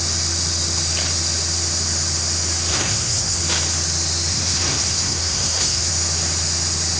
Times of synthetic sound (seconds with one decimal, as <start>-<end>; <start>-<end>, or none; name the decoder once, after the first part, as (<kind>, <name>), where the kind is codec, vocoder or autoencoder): 2.7-3.4 (codec, SNAC); 4.3-5.9